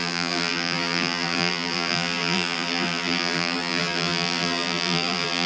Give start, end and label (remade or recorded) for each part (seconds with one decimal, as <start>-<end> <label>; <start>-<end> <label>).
0.0-5.5 remade